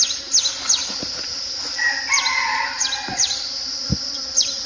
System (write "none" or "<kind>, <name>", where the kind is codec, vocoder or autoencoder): none